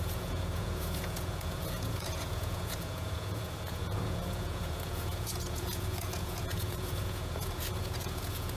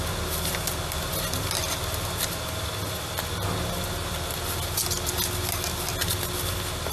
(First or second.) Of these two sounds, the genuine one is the second